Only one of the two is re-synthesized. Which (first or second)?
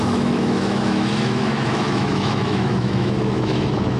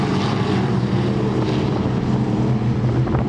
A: first